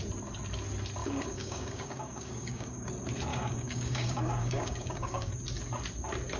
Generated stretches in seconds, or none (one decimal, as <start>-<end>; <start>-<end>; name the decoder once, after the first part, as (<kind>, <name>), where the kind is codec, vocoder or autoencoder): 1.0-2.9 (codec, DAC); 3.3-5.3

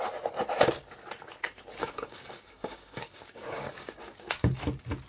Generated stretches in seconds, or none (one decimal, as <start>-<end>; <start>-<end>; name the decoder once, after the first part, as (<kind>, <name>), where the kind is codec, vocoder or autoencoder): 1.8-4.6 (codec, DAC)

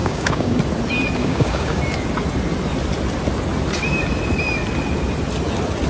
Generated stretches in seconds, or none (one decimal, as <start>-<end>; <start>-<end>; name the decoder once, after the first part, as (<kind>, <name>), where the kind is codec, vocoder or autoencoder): 0.0-0.6 (codec, DAC); 1.2-1.8

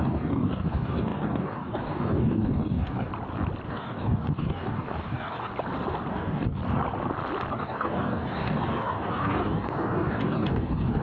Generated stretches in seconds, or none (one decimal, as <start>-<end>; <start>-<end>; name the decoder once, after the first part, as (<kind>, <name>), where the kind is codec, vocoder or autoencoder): 0.0-3.1 (codec, DAC); 3.7-5.5; 6.1-6.6; 7.5-11.0

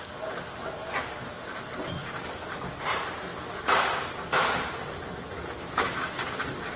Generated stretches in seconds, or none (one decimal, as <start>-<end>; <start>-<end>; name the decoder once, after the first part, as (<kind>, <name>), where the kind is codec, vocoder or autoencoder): 2.0-2.6 (codec, DAC); 5.6-6.3